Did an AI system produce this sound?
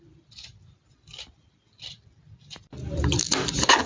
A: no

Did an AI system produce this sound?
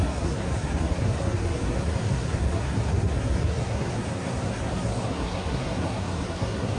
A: yes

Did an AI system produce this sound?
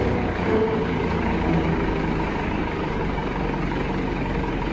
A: yes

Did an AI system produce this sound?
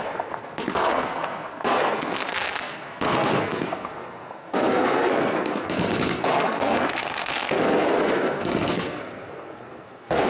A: yes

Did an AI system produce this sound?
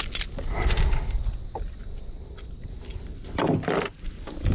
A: no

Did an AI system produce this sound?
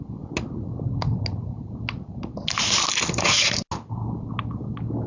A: no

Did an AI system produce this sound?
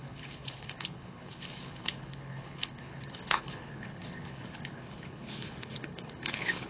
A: yes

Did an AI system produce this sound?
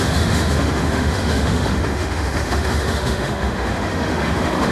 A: yes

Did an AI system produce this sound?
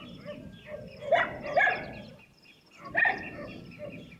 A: yes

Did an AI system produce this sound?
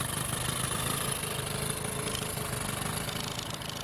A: no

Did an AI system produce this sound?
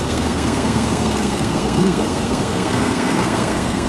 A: yes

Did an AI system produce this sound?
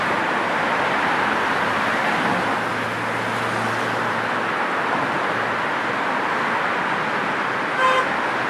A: no